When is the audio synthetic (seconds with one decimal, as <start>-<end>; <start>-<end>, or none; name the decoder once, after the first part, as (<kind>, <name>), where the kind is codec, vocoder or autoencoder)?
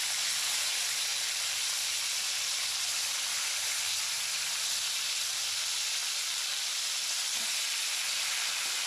6.0-7.4 (vocoder, BigVGAN v2)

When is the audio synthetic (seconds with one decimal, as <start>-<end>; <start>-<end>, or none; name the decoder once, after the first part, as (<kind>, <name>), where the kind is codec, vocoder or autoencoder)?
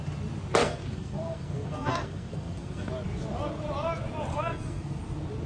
0.6-2.9 (codec, SNAC); 4.3-5.0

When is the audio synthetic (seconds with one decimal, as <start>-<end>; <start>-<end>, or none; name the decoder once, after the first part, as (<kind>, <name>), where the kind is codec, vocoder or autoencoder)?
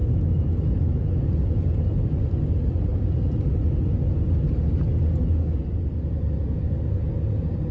0.0-0.9 (autoencoder, DAC-VAE)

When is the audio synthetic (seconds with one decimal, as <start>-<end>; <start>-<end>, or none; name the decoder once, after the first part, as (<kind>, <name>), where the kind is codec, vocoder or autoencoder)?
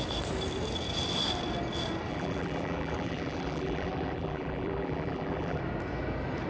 2.1-5.6 (vocoder, BigVGAN v2)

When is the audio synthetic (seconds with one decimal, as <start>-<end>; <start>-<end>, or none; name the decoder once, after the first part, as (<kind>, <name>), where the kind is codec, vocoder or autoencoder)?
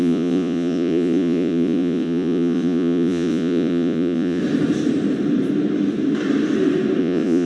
0.0-4.4 (vocoder, Vocos); 7.0-7.5